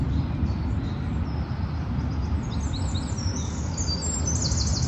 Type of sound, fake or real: real